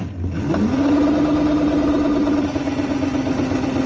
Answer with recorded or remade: recorded